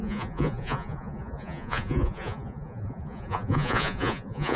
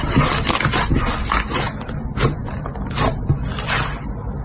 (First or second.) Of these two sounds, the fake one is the first